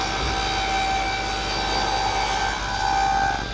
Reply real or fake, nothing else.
real